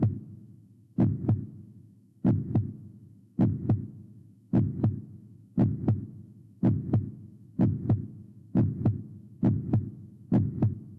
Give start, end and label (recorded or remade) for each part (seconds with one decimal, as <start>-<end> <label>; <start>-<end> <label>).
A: 0.0-11.0 remade